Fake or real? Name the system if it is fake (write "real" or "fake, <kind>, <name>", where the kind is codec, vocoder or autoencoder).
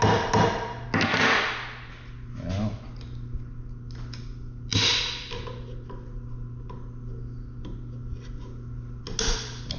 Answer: real